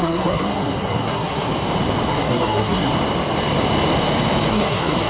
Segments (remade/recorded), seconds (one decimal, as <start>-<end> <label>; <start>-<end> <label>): 0.0-1.5 remade; 1.5-2.1 recorded; 2.1-2.9 remade; 2.9-4.5 recorded; 4.5-5.1 remade